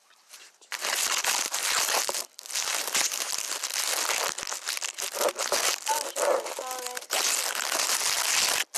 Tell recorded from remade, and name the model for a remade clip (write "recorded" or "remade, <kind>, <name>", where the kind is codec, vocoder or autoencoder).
recorded